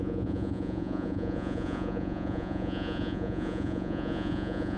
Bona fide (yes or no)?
no